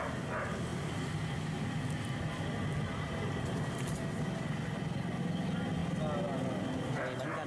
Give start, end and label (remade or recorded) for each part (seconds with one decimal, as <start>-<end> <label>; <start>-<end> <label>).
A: 0.0-7.5 recorded